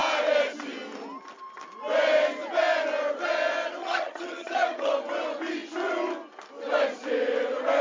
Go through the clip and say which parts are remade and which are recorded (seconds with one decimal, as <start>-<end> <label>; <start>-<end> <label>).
0.0-3.8 recorded; 3.8-4.9 remade; 4.9-7.8 recorded